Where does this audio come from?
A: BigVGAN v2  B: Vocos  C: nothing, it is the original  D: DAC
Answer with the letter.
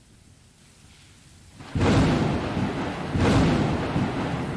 C